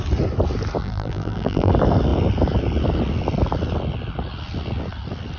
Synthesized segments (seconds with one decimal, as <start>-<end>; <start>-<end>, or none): 0.8-1.7